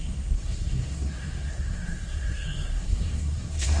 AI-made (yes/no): yes